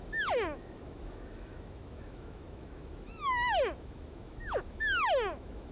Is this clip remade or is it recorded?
remade